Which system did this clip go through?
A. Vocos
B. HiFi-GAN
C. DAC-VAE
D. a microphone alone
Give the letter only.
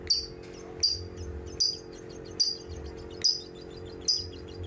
D